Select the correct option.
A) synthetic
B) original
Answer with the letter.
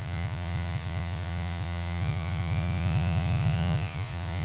A